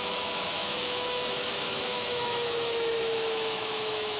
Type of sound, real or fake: fake